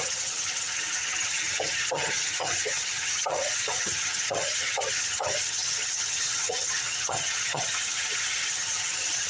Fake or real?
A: fake